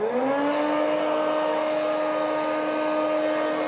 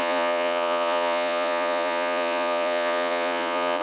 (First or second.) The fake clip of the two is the second